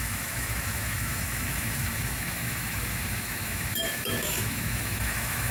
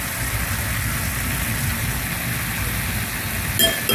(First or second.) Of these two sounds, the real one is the second